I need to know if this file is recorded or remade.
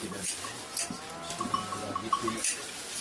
recorded